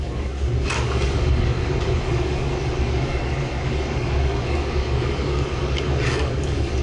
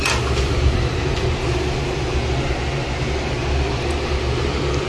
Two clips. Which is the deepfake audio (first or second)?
first